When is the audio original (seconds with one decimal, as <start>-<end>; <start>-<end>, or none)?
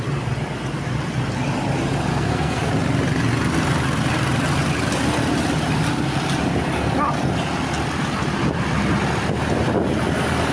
0.0-2.1; 2.7-10.5